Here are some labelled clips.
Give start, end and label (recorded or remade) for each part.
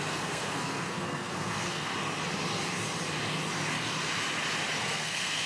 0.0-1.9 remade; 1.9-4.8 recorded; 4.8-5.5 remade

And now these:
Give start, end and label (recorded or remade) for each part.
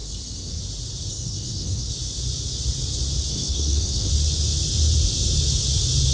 0.0-0.6 remade; 0.6-1.1 recorded; 1.1-1.9 remade; 1.9-3.3 recorded; 3.3-4.1 remade; 4.1-6.1 recorded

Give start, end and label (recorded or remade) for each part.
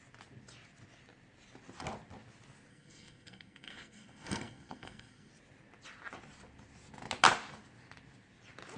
0.0-2.7 recorded; 2.7-5.3 remade; 5.3-8.8 recorded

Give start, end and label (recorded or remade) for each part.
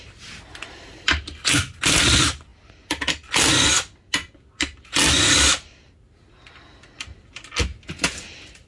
0.0-8.7 recorded